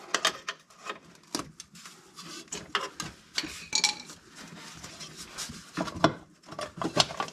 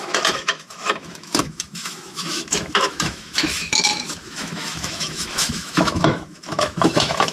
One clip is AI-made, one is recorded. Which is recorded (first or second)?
first